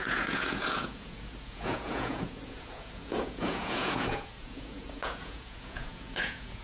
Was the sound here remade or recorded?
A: remade